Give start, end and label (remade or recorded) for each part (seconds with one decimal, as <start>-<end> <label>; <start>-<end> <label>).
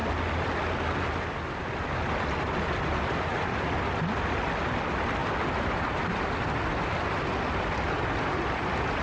0.0-9.0 recorded